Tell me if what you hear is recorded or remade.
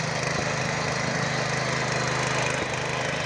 recorded